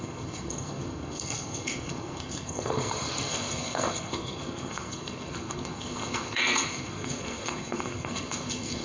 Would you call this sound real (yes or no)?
no